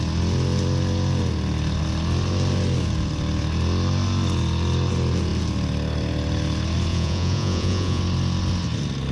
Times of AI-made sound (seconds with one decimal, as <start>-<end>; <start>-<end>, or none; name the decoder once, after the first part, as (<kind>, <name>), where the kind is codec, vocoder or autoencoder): 6.9-8.0 (vocoder, Vocos)